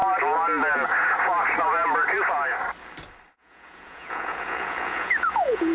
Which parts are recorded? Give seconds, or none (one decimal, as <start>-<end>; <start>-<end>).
0.0-3.3